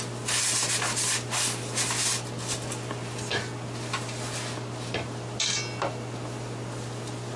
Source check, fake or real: real